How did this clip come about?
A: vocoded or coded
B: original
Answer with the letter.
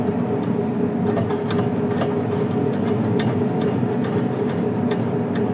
B